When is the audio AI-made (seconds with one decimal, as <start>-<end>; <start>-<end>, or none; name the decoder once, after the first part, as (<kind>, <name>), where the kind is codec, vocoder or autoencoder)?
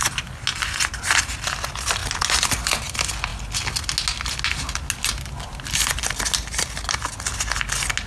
0.5-1.1 (vocoder, BigVGAN v2)